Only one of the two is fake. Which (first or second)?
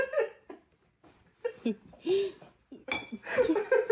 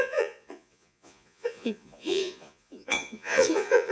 second